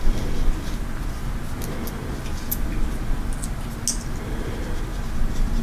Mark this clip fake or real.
real